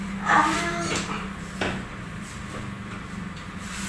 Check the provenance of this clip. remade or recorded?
remade